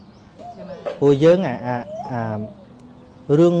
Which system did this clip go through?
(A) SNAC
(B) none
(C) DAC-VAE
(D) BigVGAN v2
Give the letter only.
B